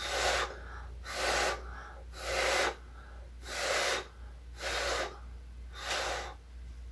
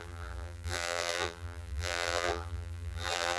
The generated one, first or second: second